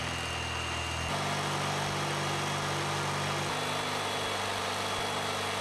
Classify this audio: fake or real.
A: real